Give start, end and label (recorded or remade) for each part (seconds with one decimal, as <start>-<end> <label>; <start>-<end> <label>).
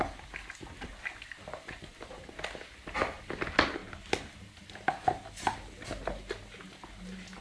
0.0-7.4 recorded